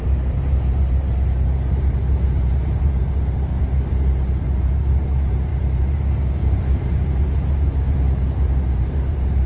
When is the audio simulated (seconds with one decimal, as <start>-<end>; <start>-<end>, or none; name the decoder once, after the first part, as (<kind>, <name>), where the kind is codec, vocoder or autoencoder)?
0.0-3.5 (vocoder, BigVGAN v2); 4.7-9.5